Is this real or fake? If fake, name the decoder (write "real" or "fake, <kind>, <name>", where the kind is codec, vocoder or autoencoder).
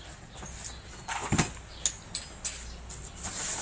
real